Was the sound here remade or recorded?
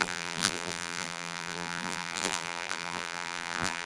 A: remade